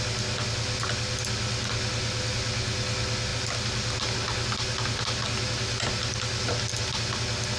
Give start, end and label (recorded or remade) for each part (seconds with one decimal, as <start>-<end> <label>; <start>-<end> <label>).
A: 0.0-7.6 recorded